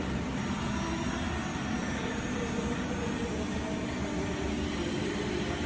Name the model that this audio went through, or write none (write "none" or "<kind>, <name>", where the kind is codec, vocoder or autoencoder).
none